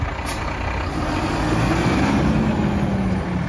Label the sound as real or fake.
real